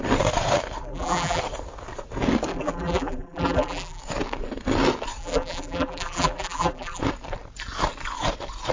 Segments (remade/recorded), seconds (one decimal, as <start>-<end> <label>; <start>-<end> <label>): 0.0-0.8 recorded; 0.8-1.4 remade; 1.4-2.5 recorded; 2.5-4.0 remade; 4.0-5.2 recorded; 5.2-7.0 remade; 7.0-8.7 recorded

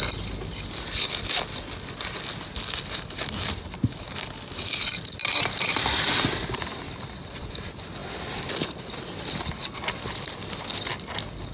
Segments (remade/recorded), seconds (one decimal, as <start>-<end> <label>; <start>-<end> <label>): 0.0-11.5 recorded